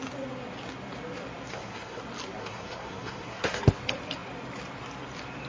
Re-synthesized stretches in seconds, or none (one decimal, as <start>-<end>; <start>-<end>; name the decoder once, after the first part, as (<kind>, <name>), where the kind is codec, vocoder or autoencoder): 1.5-2.0 (codec, SNAC); 2.4-3.6